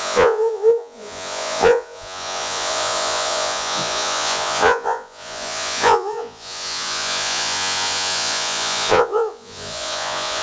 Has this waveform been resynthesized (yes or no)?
yes